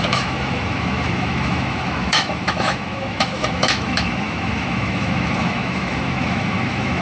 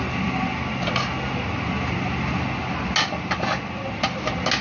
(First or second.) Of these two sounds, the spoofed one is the first